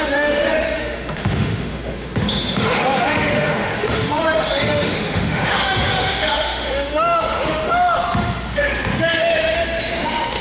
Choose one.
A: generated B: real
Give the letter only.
A